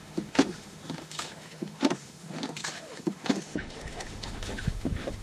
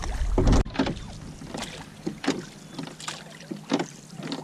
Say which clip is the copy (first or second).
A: first